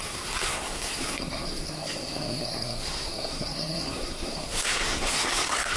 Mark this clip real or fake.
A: fake